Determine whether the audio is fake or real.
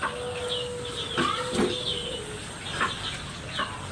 real